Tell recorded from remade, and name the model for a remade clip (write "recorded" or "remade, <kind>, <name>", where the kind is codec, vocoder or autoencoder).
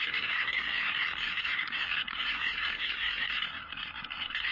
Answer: remade, codec, SNAC